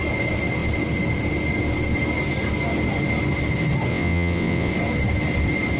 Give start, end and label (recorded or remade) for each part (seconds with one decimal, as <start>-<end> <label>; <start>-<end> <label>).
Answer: 0.0-3.9 recorded; 3.9-4.7 remade; 4.7-5.8 recorded